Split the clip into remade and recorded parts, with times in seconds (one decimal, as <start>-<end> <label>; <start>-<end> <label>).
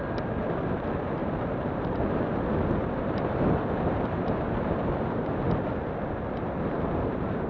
0.0-1.2 recorded; 1.2-2.2 remade; 2.2-2.8 recorded; 2.8-5.3 remade; 5.3-7.5 recorded